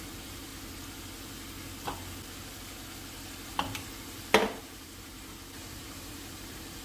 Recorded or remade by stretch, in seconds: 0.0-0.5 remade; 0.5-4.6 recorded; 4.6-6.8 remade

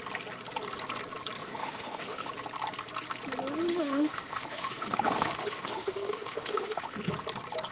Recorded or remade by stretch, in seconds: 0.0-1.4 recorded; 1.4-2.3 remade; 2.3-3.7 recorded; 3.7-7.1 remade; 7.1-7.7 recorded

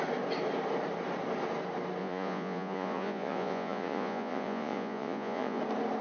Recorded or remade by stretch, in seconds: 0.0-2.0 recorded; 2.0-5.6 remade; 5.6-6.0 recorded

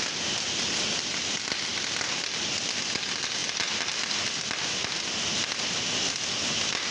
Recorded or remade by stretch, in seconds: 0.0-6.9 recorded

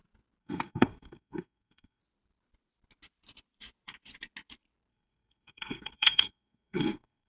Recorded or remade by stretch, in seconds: 0.0-0.4 recorded; 0.4-2.0 remade; 2.0-4.9 recorded; 4.9-7.3 remade